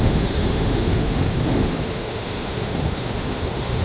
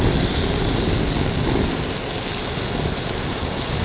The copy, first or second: first